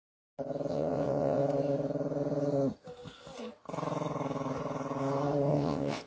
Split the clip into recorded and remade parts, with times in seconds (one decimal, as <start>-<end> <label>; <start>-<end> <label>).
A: 0.0-0.7 recorded; 0.7-1.4 remade; 1.4-5.5 recorded; 5.5-6.1 remade